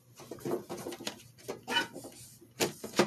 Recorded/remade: recorded